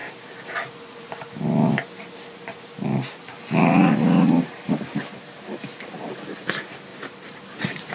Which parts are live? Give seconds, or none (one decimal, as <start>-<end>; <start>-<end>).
0.0-6.9